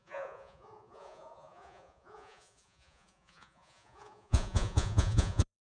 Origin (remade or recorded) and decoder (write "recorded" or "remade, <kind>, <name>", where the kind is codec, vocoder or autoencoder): remade, vocoder, Vocos